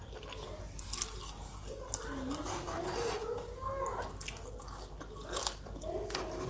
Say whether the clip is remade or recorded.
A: recorded